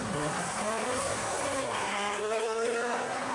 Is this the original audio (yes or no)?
no